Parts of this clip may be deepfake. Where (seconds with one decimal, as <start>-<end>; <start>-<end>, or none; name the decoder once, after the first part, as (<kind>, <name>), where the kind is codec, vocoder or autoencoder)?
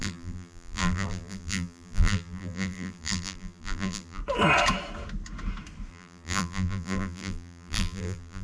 0.0-4.2 (vocoder, BigVGAN v2); 5.9-8.4